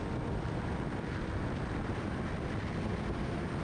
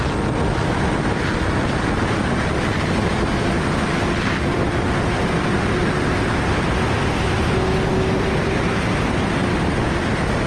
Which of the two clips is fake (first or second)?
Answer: first